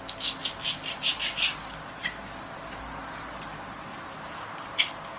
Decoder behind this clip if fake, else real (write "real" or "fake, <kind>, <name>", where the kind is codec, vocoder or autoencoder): real